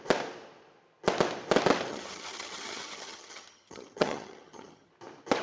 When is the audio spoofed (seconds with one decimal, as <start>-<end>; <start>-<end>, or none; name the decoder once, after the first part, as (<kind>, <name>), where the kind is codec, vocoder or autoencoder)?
1.9-4.9 (vocoder, HiFi-GAN)